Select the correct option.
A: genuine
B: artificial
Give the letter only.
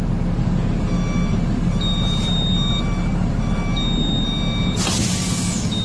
A